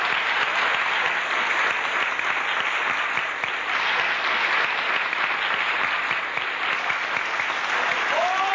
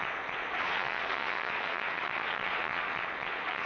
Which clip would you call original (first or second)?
first